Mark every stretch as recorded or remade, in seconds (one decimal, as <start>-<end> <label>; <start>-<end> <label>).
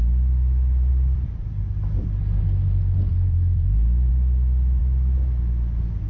0.0-0.9 recorded; 0.9-2.4 remade; 2.4-3.1 recorded; 3.1-4.1 remade; 4.1-6.1 recorded